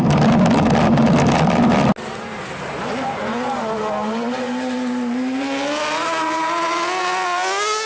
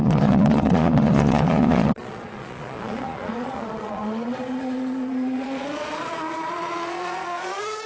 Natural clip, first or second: first